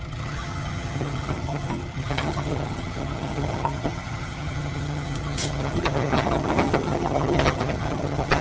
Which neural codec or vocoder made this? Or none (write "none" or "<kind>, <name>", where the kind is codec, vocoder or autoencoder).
vocoder, HiFi-GAN